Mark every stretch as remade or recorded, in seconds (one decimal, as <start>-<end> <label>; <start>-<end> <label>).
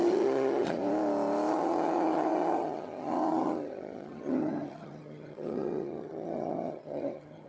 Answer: 0.0-0.8 remade; 0.8-1.5 recorded; 1.5-7.5 remade